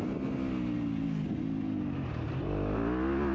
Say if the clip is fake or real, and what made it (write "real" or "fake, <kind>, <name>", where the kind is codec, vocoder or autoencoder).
real